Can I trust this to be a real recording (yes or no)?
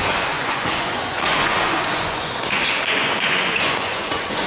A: no